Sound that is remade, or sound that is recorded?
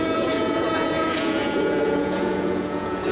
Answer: remade